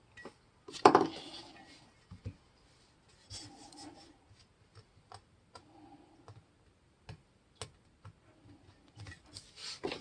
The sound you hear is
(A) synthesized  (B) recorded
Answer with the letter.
B